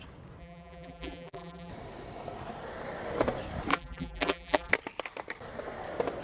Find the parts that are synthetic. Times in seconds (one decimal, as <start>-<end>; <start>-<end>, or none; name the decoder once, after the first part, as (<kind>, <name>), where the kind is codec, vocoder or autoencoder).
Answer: 0.4-1.7 (vocoder, BigVGAN v2); 3.7-4.7